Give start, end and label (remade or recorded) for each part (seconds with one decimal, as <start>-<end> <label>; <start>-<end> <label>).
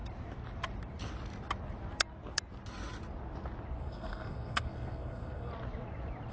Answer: 0.0-3.8 recorded; 3.8-5.5 remade; 5.5-6.3 recorded